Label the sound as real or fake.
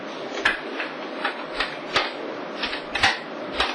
real